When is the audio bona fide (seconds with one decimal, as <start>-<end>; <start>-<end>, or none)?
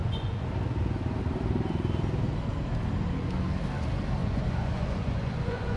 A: 0.5-4.2